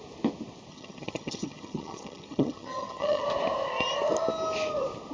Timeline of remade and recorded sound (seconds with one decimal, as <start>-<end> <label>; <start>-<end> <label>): 0.0-0.7 recorded; 0.7-3.2 remade; 3.2-5.1 recorded